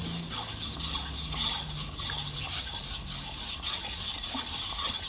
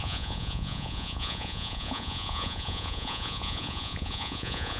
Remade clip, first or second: second